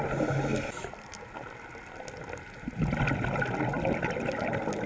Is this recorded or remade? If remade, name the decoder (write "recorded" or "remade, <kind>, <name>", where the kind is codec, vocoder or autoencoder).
recorded